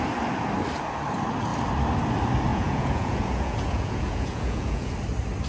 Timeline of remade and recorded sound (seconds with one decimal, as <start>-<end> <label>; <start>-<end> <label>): 0.0-2.5 recorded; 2.5-4.9 remade; 4.9-5.5 recorded